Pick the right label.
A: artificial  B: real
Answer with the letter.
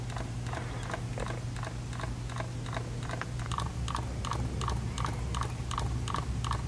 B